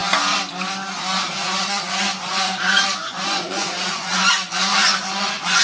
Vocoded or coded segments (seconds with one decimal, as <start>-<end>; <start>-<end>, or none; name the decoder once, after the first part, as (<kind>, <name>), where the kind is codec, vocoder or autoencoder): 1.3-5.6 (vocoder, Vocos)